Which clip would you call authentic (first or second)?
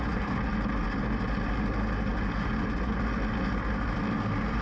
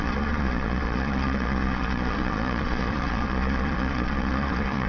first